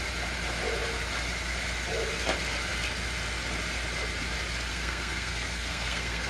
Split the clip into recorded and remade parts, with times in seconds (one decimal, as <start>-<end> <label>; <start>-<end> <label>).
0.0-4.7 recorded; 4.7-6.3 remade